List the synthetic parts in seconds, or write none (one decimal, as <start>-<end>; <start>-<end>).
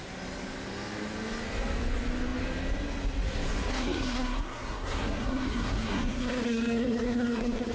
3.7-7.7